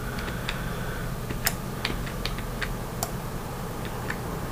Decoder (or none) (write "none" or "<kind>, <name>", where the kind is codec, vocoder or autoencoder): none